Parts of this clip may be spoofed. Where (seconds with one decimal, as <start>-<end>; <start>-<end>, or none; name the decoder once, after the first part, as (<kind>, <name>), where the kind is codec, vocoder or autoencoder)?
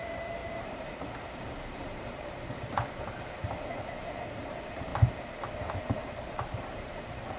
0.0-4.9 (vocoder, BigVGAN v2); 5.7-7.4